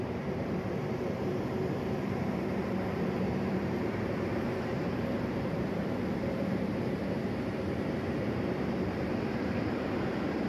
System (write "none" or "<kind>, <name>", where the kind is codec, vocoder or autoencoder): vocoder, BigVGAN v2